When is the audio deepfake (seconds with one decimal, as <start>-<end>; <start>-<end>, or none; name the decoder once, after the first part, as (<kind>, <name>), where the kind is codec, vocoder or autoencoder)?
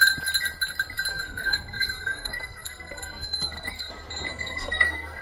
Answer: 1.1-3.9 (codec, SNAC); 4.3-5.2